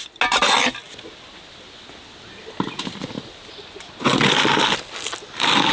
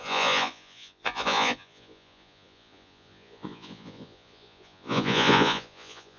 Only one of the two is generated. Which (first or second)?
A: second